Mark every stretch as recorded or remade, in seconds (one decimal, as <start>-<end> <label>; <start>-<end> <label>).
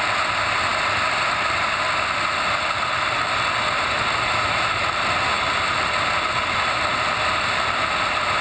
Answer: 0.0-8.4 recorded